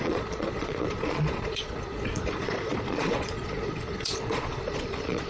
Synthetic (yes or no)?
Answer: yes